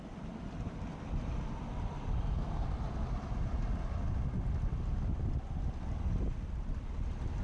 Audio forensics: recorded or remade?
recorded